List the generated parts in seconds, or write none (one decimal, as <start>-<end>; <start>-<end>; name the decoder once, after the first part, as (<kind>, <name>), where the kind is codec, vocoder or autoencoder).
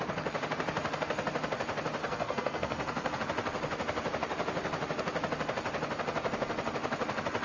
2.0-3.2 (codec, SNAC)